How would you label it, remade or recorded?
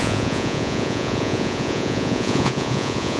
remade